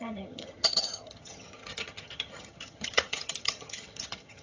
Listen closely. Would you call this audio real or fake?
fake